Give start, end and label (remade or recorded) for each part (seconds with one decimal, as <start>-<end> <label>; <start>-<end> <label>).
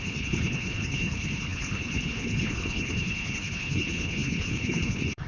0.0-5.3 remade